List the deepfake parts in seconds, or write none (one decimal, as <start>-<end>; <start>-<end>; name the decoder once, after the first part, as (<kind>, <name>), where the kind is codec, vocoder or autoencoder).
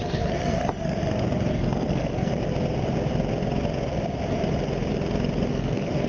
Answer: 0.0-1.0 (codec, SNAC); 1.5-2.3; 5.5-6.1